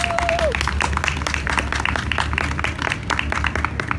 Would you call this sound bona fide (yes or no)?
yes